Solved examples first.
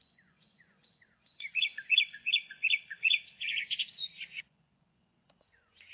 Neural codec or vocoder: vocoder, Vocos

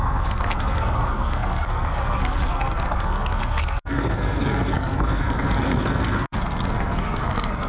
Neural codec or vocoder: codec, SNAC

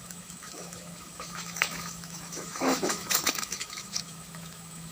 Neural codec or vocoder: autoencoder, DAC-VAE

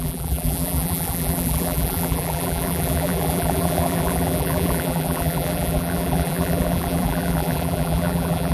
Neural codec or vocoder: vocoder, BigVGAN v2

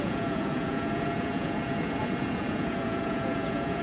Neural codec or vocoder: vocoder, Vocos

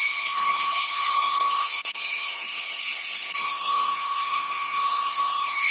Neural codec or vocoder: codec, HILCodec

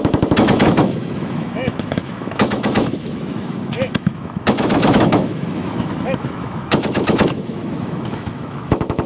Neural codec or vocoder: autoencoder, DAC-VAE